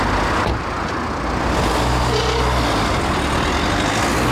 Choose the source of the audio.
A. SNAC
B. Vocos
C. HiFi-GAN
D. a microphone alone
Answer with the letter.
D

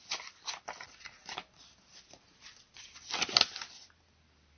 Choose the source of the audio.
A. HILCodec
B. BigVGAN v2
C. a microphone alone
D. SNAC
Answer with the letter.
C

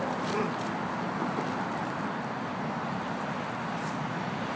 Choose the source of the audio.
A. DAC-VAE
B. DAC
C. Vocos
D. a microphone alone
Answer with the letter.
D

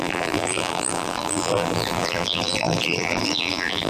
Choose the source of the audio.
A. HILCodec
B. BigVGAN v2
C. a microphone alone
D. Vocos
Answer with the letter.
B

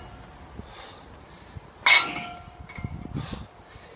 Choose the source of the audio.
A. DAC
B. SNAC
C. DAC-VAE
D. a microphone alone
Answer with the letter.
D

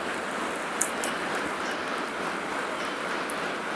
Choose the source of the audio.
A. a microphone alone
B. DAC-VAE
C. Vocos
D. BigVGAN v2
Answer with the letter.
A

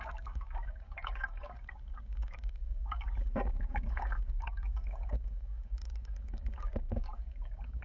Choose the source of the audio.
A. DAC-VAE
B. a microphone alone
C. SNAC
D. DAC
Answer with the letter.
D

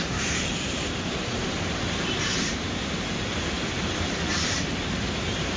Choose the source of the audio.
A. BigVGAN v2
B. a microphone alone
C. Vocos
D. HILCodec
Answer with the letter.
A